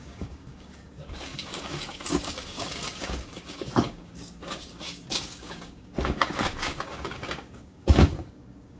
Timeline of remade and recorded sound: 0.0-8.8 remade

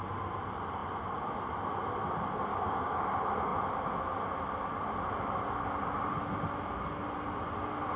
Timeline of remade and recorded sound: 0.0-2.5 recorded; 2.5-3.0 remade; 3.0-8.0 recorded

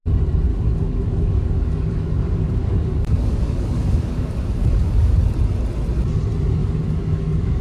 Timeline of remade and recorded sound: 0.0-0.5 recorded; 0.5-5.1 remade; 5.1-6.6 recorded; 6.6-7.6 remade

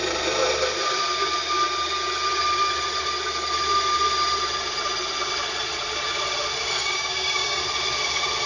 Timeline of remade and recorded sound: 0.0-6.8 recorded; 6.8-7.6 remade; 7.6-8.5 recorded

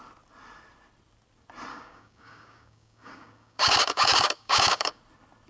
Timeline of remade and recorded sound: 0.0-1.7 recorded; 1.7-5.0 remade; 5.0-5.5 recorded

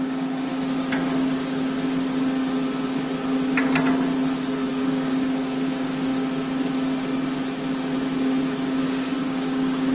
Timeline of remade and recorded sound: 0.0-0.5 remade; 0.5-4.7 recorded; 4.7-6.1 remade; 6.1-9.2 recorded; 9.2-9.9 remade

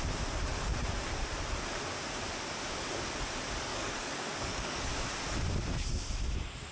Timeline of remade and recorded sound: 0.0-3.7 recorded; 3.7-4.9 remade; 4.9-6.7 recorded

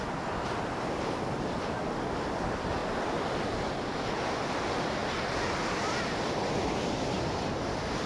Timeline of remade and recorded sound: 0.0-8.1 recorded